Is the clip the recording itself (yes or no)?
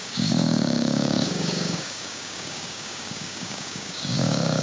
no